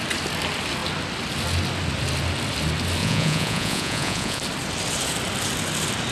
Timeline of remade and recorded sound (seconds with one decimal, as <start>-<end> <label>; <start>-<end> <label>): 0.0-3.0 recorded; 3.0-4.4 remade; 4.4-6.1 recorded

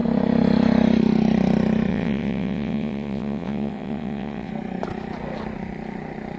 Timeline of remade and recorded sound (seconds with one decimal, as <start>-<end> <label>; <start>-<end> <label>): 0.0-1.9 recorded; 1.9-4.5 remade; 4.5-6.4 recorded

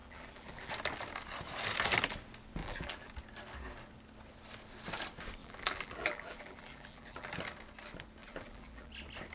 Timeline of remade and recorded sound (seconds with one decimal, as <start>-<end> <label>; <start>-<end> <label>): 0.0-0.7 remade; 0.7-2.6 recorded; 2.6-3.1 remade; 3.1-5.4 recorded; 5.4-7.3 remade; 7.3-8.2 recorded; 8.2-8.9 remade; 8.9-9.3 recorded